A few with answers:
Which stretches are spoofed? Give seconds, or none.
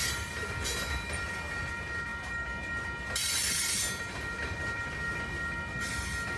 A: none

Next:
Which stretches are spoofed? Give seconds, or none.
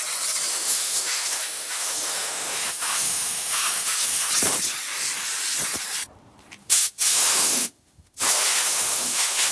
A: 0.5-4.3 (autoencoder, DAC-VAE); 6.6-9.5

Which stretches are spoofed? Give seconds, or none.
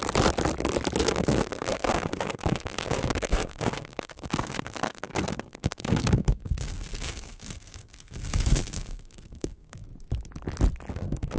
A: 1.0-9.9 (codec, SNAC); 10.9-11.4